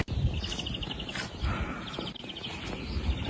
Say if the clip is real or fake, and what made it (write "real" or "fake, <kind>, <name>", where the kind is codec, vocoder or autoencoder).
real